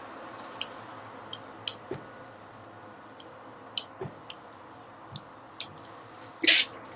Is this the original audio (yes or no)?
yes